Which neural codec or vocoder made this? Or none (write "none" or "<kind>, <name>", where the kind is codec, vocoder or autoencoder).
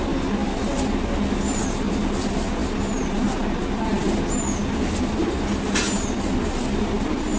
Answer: none